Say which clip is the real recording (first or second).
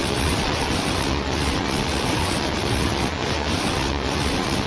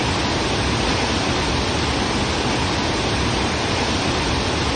second